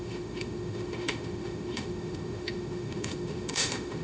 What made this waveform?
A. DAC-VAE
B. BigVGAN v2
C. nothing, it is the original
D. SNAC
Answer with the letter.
A